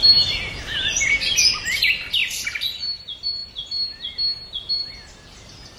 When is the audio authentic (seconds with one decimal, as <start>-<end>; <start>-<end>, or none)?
0.0-2.2; 2.8-5.8